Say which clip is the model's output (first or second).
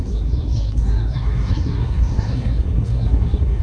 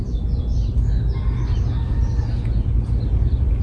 first